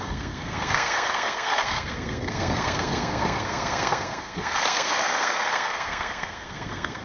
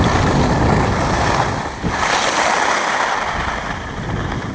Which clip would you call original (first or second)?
second